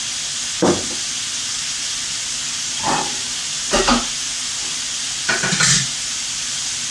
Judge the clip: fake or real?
real